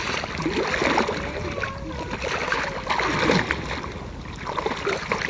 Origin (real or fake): real